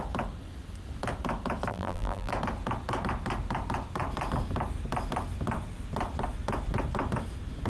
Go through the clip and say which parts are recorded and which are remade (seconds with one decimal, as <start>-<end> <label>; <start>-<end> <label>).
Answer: 0.0-1.7 recorded; 1.7-2.3 remade; 2.3-7.7 recorded